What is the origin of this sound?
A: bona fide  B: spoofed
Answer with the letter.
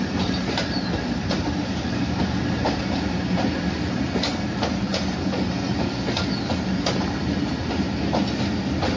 A